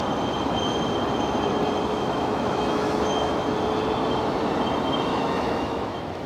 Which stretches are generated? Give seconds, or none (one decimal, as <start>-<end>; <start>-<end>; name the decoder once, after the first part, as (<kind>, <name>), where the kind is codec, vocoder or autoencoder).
1.9-3.5 (autoencoder, DAC-VAE); 5.1-6.3

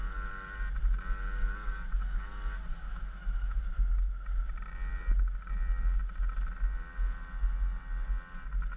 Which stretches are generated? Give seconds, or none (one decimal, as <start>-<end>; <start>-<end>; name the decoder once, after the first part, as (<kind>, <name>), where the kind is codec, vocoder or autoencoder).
2.7-3.6 (autoencoder, DAC-VAE)

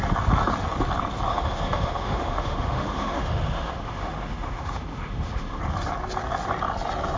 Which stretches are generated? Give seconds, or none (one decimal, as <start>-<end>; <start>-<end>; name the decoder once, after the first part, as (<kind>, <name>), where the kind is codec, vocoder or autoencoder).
1.3-5.6 (autoencoder, DAC-VAE)

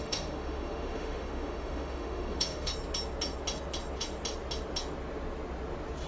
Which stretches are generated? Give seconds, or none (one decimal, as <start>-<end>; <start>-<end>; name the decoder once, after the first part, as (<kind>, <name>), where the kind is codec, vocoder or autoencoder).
0.0-2.7 (autoencoder, DAC-VAE)

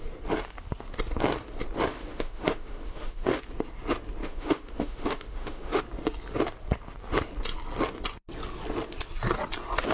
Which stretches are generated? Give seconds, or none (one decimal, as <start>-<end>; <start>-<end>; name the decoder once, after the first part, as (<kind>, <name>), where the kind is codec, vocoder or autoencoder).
1.9-3.4 (autoencoder, DAC-VAE); 4.2-5.8

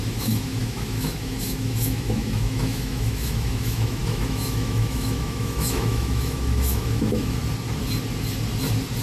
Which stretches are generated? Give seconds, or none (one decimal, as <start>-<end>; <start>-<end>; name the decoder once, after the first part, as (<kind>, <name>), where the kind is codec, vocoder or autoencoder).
0.0-7.4 (autoencoder, DAC-VAE)

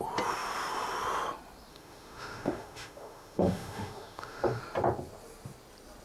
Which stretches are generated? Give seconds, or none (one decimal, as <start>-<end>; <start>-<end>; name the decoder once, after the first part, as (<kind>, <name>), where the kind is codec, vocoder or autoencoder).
1.7-4.6 (autoencoder, DAC-VAE)

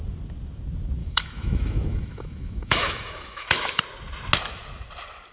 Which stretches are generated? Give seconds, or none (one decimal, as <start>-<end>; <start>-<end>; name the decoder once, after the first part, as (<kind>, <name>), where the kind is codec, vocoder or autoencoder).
1.0-3.8 (autoencoder, DAC-VAE)